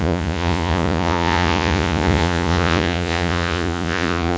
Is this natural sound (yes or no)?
no